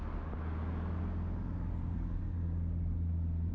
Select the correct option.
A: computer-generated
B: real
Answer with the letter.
B